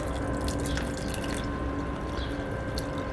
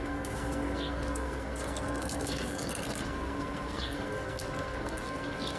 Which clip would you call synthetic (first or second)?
second